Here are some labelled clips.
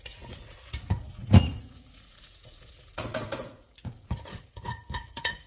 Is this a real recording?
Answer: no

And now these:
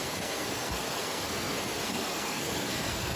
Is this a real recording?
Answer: no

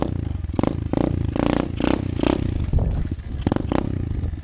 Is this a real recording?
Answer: yes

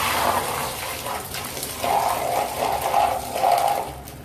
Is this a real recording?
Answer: yes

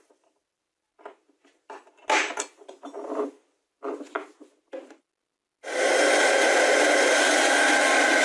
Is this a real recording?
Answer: yes